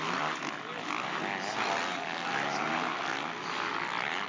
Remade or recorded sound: recorded